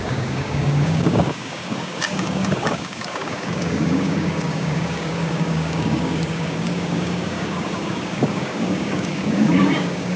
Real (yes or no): no